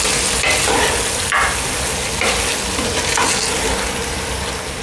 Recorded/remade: recorded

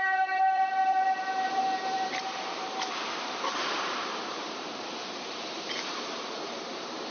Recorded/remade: remade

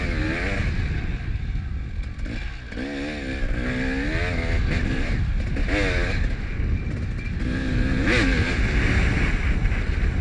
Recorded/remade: recorded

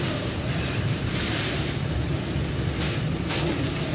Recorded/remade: remade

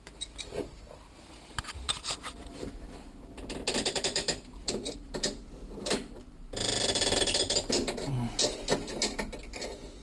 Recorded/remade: recorded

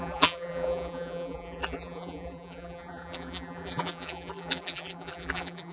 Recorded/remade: remade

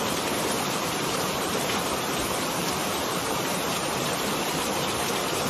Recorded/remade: remade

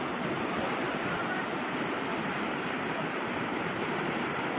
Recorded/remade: remade